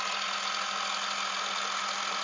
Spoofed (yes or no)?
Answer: no